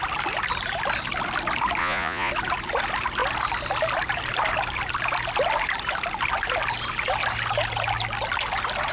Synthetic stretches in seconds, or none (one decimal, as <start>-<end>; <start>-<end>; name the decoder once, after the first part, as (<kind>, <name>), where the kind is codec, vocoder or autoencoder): 1.8-2.3 (vocoder, Vocos)